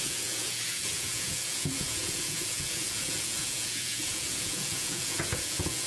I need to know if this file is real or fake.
fake